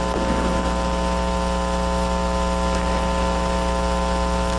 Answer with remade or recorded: recorded